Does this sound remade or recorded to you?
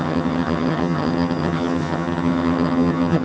remade